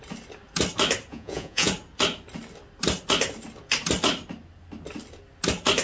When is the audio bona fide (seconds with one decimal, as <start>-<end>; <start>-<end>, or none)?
0.0-1.1; 1.7-5.8